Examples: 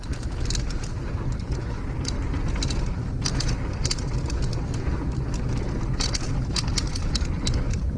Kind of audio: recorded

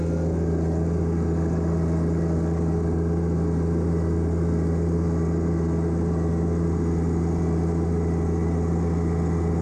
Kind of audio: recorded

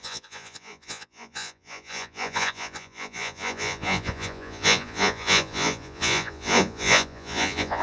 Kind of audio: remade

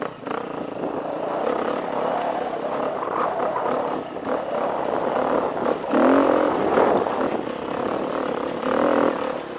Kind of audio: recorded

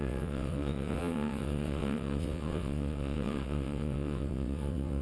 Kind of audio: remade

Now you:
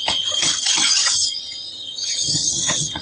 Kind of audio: remade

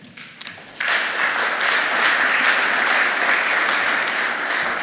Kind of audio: recorded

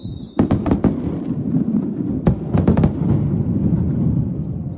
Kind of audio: recorded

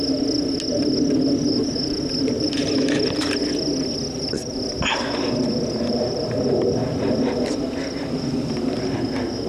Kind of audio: recorded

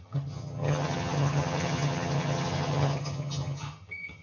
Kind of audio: remade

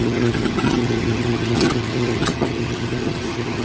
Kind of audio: remade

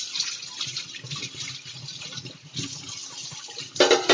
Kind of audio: recorded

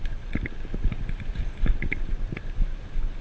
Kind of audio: recorded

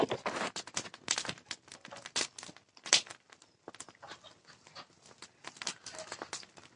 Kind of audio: recorded